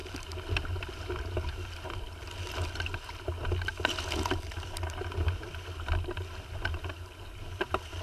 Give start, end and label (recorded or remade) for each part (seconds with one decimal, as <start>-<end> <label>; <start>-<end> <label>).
0.0-8.0 recorded